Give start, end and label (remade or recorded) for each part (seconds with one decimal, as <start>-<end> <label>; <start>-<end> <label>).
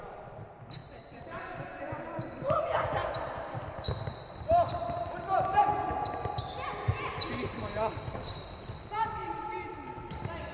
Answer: 0.0-5.7 remade; 5.7-8.1 recorded; 8.1-10.5 remade